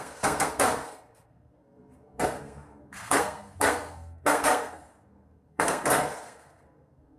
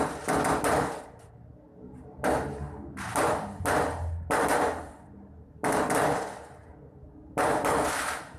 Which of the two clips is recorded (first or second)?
second